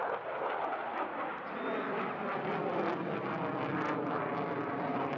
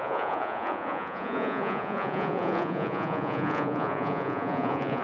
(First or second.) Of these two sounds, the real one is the first